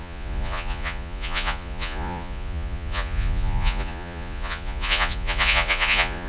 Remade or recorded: remade